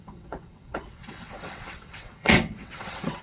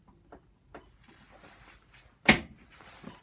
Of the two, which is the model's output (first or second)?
first